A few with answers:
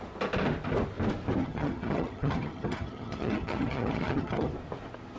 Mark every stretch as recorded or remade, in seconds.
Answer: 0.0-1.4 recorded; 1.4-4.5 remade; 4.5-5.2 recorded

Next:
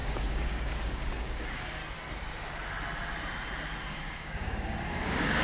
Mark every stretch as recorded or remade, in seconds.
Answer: 0.0-1.8 remade; 1.8-3.9 recorded; 3.9-5.4 remade

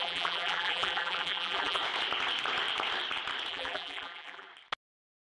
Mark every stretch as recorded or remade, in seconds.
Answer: 0.0-1.8 remade; 1.8-3.5 recorded; 3.5-4.5 remade; 4.5-5.4 recorded

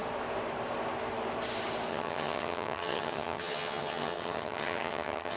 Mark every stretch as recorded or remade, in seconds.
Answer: 0.0-1.9 recorded; 1.9-5.4 remade